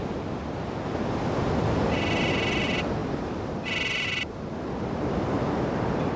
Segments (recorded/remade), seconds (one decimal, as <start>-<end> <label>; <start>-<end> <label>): 0.0-6.2 recorded